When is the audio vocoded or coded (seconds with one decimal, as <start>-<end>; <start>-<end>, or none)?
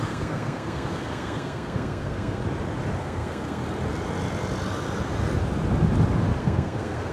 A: 0.0-2.4; 3.0-3.6; 6.4-7.1